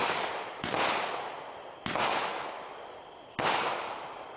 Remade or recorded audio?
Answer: recorded